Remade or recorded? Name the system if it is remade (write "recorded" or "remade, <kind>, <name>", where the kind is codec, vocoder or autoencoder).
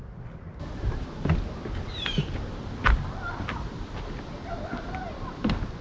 recorded